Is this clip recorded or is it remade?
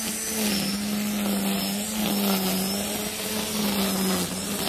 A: recorded